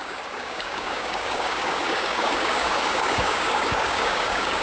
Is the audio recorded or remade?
remade